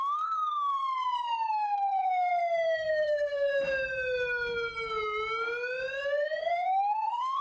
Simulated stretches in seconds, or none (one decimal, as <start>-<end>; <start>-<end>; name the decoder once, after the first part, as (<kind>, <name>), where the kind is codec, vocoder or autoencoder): 0.0-0.8 (codec, SNAC); 1.5-2.3; 2.9-3.5; 6.4-7.4

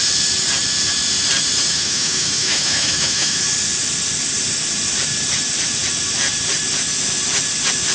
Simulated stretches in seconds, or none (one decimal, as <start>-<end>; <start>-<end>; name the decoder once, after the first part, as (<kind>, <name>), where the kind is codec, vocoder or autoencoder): 1.7-3.4 (autoencoder, DAC-VAE)

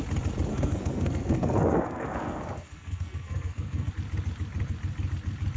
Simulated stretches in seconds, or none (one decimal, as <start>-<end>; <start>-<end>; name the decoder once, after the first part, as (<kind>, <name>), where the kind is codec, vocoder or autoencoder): 0.5-3.9 (codec, SNAC)

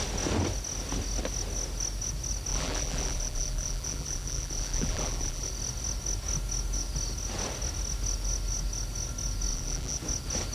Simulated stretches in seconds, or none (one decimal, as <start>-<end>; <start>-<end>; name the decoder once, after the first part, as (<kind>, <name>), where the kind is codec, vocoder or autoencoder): 2.5-5.5 (vocoder, BigVGAN v2); 9.5-10.0

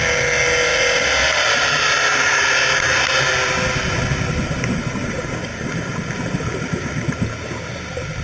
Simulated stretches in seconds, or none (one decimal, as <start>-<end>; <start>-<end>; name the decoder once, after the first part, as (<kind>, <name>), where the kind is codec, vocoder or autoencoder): none

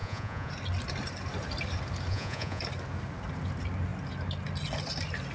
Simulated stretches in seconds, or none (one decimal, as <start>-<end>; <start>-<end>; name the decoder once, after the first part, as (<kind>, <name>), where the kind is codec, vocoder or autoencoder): 0.0-0.5 (vocoder, Vocos); 2.1-2.6